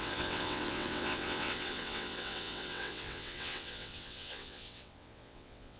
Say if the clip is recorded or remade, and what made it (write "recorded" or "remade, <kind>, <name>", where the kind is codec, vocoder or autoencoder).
remade, vocoder, WaveNeXt